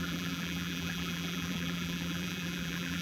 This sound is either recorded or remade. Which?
remade